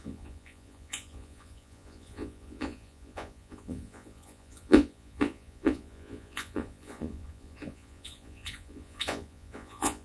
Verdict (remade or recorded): remade